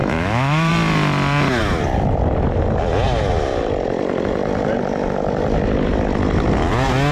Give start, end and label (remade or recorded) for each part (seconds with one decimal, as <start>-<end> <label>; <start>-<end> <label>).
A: 0.0-0.7 remade; 0.7-7.1 recorded